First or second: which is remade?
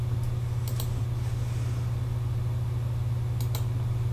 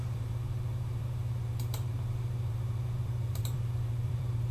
second